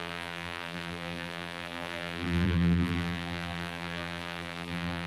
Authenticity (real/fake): fake